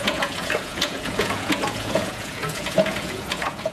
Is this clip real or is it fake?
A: fake